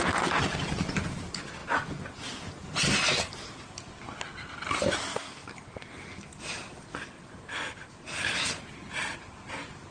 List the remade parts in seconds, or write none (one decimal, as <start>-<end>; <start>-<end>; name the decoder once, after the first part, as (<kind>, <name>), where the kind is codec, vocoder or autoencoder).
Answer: none